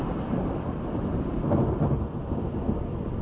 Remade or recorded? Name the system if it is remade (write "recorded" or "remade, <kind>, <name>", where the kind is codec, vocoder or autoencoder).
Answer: recorded